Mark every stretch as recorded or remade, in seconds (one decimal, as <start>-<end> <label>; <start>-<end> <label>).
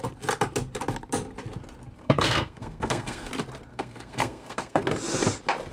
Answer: 0.0-2.0 recorded; 2.0-3.3 remade; 3.3-3.7 recorded; 3.7-4.8 remade; 4.8-5.7 recorded